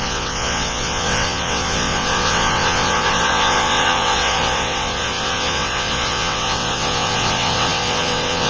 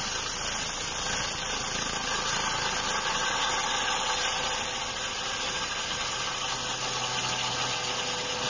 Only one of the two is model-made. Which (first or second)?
first